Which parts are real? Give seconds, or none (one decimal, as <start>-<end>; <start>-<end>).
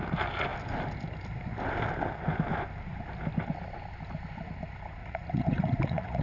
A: 0.0-5.0